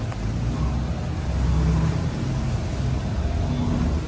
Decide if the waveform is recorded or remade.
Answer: recorded